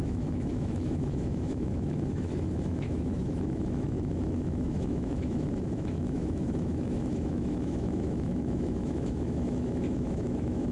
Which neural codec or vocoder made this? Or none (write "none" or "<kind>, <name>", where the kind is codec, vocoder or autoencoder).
autoencoder, DAC-VAE